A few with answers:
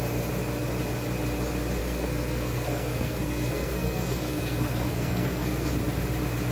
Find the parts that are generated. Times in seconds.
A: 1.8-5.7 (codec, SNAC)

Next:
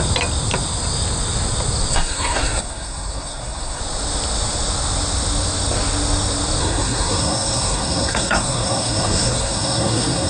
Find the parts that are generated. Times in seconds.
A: 1.9-3.8 (codec, SNAC); 6.6-10.3